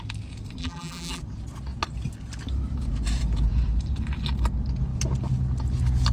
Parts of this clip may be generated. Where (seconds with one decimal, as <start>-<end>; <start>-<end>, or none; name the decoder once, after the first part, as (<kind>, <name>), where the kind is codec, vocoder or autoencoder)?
0.6-1.2 (vocoder, BigVGAN v2)